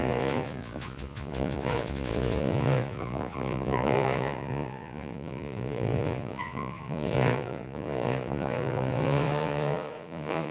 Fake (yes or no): yes